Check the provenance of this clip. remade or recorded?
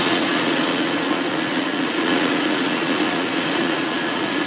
remade